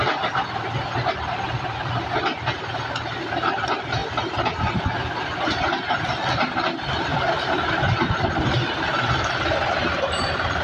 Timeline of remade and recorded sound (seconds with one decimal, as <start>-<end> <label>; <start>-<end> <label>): 0.0-10.6 recorded